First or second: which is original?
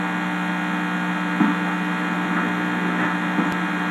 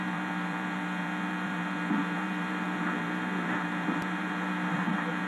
first